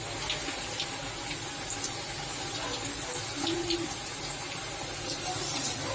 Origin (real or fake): real